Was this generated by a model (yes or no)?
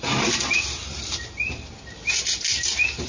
no